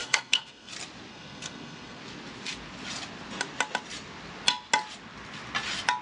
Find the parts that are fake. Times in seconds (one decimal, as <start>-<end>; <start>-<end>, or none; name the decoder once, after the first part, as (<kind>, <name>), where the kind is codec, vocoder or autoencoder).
0.0-0.7 (codec, SNAC); 1.1-2.0